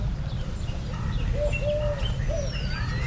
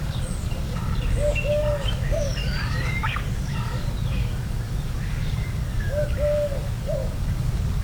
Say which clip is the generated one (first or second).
second